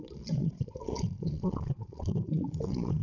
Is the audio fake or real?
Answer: fake